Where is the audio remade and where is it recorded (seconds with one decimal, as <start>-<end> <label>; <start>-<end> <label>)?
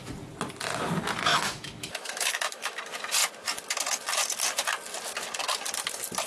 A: 0.0-1.3 recorded; 1.3-2.8 remade; 2.8-6.3 recorded